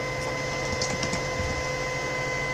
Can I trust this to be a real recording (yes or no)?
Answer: yes